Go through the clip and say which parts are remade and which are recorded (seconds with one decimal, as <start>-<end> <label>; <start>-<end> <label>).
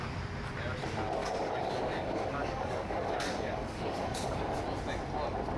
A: 0.0-1.2 recorded; 1.2-4.6 remade; 4.6-5.6 recorded